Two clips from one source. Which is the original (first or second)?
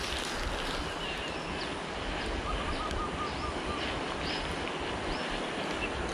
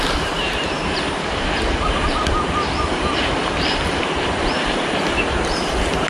first